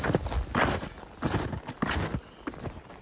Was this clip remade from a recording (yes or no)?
no